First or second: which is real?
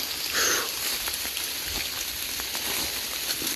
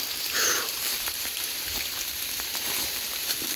first